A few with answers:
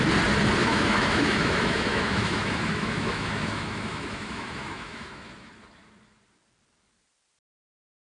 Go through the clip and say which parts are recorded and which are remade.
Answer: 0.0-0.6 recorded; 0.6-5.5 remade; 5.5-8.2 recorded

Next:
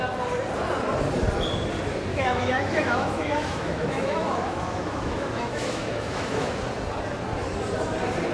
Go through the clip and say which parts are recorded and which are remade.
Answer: 0.0-2.1 recorded; 2.1-6.6 remade; 6.6-8.3 recorded

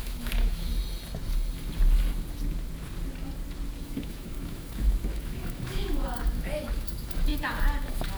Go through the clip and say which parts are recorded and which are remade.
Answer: 0.0-0.7 remade; 0.7-3.8 recorded; 3.8-8.2 remade

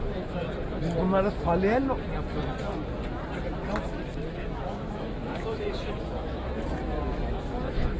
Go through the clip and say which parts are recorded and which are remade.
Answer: 0.0-0.4 remade; 0.4-4.3 recorded; 4.3-8.0 remade

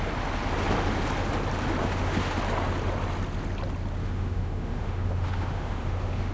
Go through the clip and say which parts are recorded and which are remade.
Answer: 0.0-1.8 recorded; 1.8-2.4 remade; 2.4-4.0 recorded; 4.0-6.3 remade

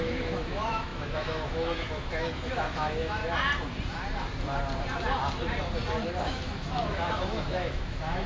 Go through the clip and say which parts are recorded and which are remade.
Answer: 0.0-3.2 remade; 3.2-6.2 recorded; 6.2-8.3 remade

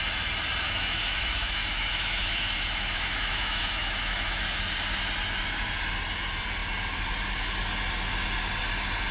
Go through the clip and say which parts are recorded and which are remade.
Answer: 0.0-0.6 recorded; 0.6-4.4 remade; 4.4-9.1 recorded

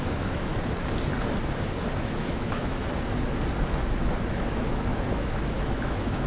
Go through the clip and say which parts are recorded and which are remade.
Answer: 0.0-0.5 remade; 0.5-2.0 recorded; 2.0-2.8 remade; 2.8-4.3 recorded; 4.3-6.3 remade